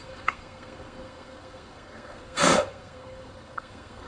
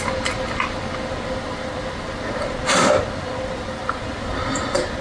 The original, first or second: second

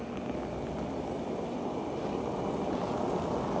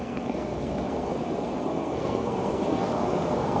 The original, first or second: first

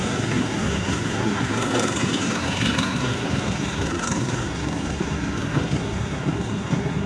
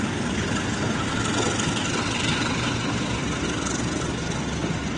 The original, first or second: second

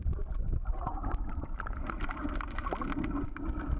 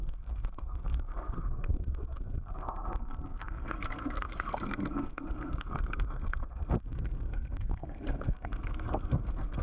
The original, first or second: first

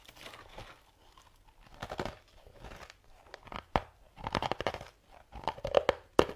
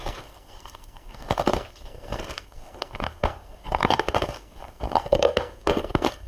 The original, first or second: first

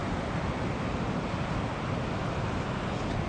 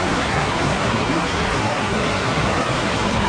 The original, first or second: first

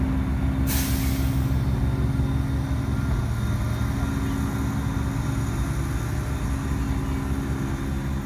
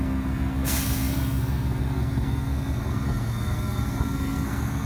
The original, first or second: first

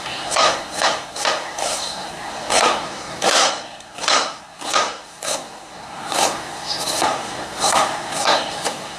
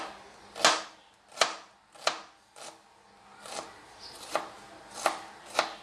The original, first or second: second